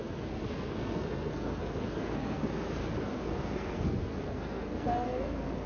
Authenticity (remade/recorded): remade